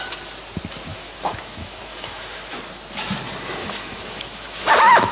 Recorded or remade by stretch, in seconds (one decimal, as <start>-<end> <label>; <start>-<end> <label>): 0.0-0.9 recorded; 0.9-2.6 remade; 2.6-3.6 recorded; 3.6-5.1 remade